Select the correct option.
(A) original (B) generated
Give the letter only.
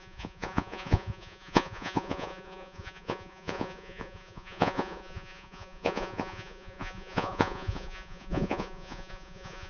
B